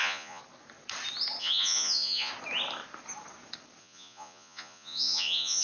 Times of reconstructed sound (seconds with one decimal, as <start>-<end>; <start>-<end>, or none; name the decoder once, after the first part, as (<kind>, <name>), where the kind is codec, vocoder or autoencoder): 0.0-0.4 (vocoder, Vocos); 1.4-2.3; 3.8-5.6